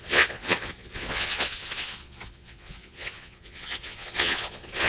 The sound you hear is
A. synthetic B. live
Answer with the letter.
A